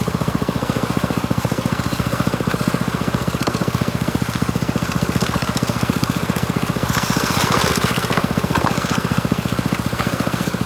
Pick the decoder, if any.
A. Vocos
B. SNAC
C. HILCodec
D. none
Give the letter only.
B